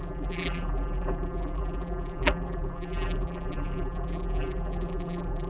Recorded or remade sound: remade